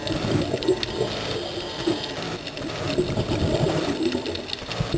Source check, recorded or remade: recorded